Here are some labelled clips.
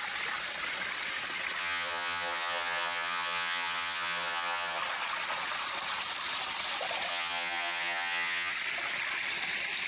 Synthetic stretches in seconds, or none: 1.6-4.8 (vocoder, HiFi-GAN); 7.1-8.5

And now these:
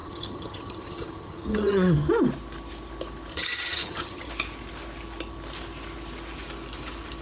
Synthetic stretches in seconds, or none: 0.0-2.1 (vocoder, HiFi-GAN); 3.3-4.3

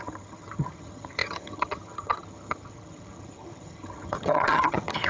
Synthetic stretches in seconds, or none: 0.0-5.1 (vocoder, HiFi-GAN)